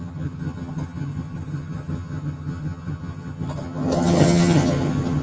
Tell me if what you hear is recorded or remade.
remade